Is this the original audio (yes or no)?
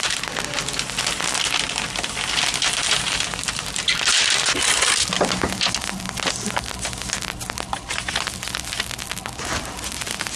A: yes